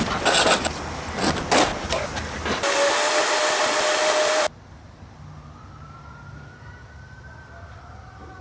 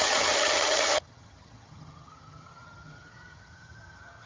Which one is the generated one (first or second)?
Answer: second